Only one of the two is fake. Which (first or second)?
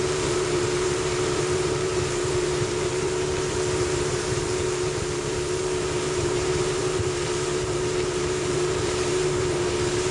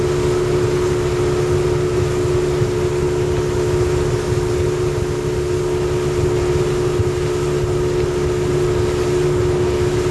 first